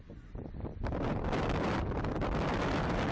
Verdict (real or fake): real